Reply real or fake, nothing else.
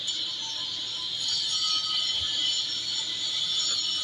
real